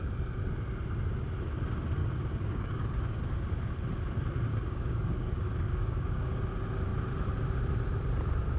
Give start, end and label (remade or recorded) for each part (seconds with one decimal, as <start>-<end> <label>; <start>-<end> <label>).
0.0-2.0 recorded; 2.0-3.7 remade; 3.7-4.5 recorded; 4.5-6.4 remade; 6.4-8.6 recorded